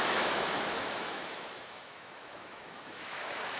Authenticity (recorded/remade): remade